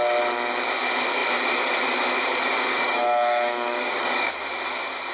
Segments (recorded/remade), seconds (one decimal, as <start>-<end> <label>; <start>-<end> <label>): 0.0-2.7 recorded; 2.7-4.3 remade; 4.3-5.1 recorded